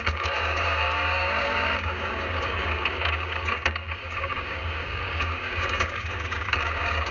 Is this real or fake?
fake